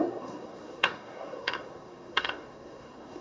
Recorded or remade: remade